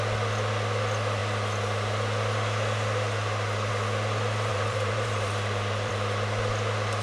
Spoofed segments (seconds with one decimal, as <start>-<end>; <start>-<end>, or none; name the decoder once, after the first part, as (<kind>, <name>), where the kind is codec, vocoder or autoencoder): 4.5-5.9 (vocoder, BigVGAN v2)